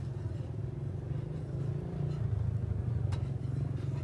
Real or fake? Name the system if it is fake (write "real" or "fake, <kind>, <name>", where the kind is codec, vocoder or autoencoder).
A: real